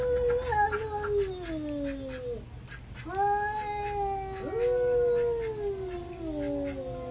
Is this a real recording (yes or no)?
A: yes